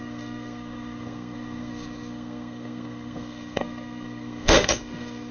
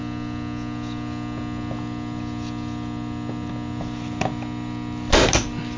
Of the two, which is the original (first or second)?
second